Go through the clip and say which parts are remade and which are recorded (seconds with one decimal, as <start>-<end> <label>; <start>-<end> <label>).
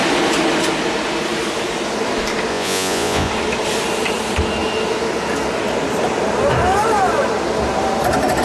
0.0-2.5 recorded; 2.5-3.3 remade; 3.3-8.4 recorded